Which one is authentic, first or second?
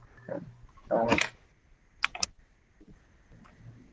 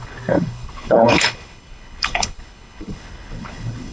first